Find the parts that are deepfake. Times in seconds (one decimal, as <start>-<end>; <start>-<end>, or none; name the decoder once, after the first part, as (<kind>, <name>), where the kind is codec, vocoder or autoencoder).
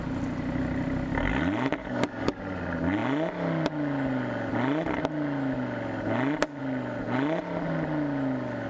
1.8-2.4 (codec, DAC)